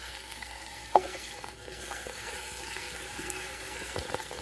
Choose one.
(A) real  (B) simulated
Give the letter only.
B